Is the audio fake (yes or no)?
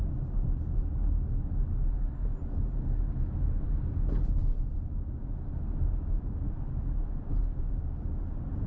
no